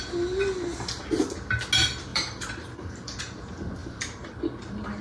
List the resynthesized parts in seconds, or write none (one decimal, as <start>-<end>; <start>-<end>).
2.1-3.2; 3.8-4.3